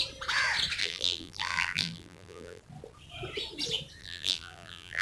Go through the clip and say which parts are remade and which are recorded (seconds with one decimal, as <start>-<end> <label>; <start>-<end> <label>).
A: 0.0-0.8 recorded; 0.8-2.6 remade; 2.6-4.0 recorded; 4.0-5.0 remade